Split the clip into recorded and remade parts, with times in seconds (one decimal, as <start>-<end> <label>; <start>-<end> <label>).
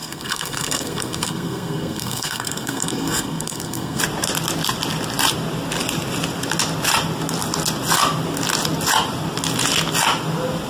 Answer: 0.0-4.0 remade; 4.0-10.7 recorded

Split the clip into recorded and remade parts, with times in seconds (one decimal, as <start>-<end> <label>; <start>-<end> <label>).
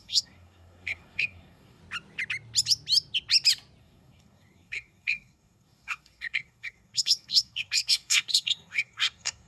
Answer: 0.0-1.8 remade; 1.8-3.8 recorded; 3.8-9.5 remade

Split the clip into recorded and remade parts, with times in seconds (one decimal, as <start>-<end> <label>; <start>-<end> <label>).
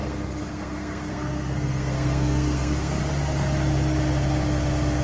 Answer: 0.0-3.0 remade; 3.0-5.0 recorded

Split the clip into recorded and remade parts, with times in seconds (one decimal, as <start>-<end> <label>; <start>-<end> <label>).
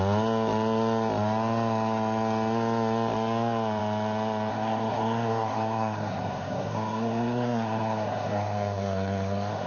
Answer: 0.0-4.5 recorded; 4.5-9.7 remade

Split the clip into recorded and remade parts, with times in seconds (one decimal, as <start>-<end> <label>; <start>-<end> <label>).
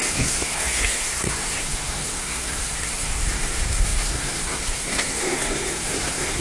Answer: 0.0-6.4 remade